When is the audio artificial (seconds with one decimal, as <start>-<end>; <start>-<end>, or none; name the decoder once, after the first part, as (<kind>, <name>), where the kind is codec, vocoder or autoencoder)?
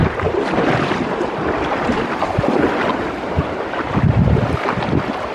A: 0.0-2.9 (vocoder, BigVGAN v2)